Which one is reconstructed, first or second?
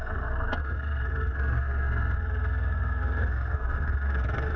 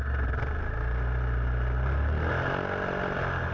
first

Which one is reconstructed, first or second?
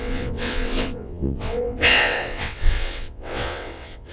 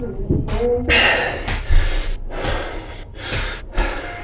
first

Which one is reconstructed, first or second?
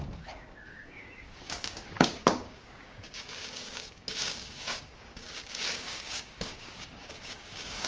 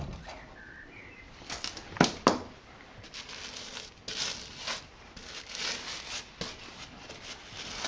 first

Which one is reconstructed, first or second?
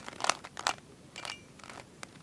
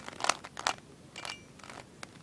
first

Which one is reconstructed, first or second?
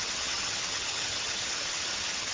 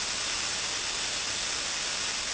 first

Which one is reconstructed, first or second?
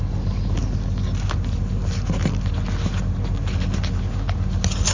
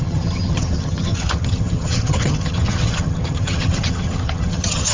second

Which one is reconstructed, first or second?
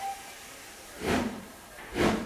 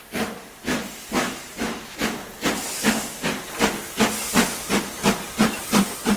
first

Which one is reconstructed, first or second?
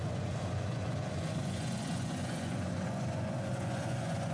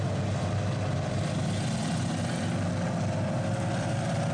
first